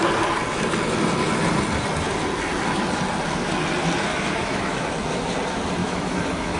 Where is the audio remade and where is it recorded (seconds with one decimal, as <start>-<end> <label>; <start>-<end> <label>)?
0.0-4.1 recorded; 4.1-4.9 remade; 4.9-5.8 recorded; 5.8-6.6 remade